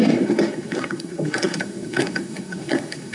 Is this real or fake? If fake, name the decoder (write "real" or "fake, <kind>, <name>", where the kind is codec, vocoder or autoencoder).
fake, codec, SNAC